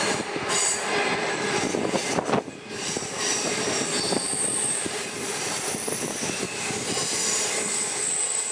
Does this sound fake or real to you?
real